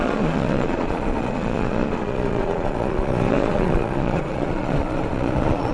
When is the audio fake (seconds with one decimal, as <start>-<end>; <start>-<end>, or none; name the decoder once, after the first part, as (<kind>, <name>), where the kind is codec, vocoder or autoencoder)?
0.0-5.7 (vocoder, Vocos)